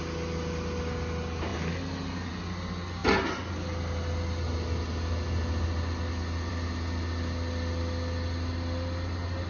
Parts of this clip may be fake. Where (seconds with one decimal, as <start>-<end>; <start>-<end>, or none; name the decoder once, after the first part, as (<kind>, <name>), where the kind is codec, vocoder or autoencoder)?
none